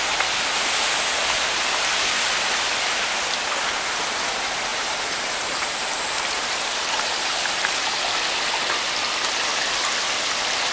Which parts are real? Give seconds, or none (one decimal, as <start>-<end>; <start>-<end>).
0.0-4.7; 7.7-10.7